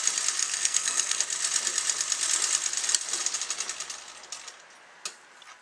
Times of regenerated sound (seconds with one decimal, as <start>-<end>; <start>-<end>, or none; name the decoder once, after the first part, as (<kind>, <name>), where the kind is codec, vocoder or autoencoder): 0.4-1.2 (codec, SNAC)